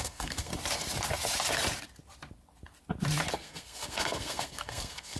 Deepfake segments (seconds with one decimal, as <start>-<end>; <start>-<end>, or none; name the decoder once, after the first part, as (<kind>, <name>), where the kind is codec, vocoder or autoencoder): 0.0-0.5 (codec, SNAC); 3.3-5.2

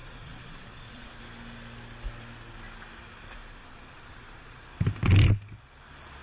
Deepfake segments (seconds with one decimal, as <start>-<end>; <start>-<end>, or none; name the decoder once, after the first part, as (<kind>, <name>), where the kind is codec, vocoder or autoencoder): 0.0-1.2 (vocoder, Vocos); 3.6-4.6

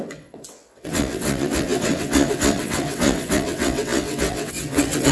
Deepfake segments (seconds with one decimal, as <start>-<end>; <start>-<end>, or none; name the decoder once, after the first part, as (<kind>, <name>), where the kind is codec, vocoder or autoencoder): 0.0-5.1 (vocoder, WaveNeXt)

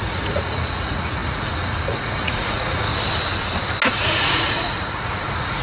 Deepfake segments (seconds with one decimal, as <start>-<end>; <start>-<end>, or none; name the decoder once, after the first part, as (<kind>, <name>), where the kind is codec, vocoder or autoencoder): 0.0-2.9 (vocoder, Vocos); 3.9-5.6

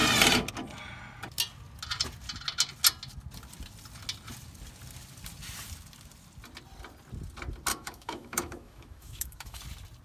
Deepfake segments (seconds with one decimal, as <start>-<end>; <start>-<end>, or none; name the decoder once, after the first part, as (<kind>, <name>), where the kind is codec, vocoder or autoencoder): 7.7-9.6 (autoencoder, DAC-VAE)

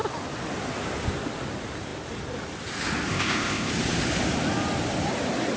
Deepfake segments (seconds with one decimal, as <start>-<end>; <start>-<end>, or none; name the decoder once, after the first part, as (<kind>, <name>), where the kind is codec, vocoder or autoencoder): 3.1-3.7 (codec, ZipCodec)

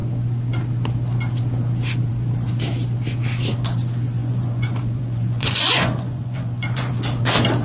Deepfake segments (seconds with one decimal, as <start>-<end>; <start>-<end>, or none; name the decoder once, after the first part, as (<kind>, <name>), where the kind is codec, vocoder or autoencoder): 4.2-6.9 (vocoder, Vocos)